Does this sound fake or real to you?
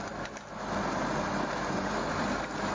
real